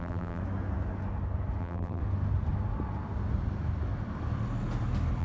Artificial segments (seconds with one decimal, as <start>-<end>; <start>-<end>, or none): 0.0-0.4; 1.6-2.0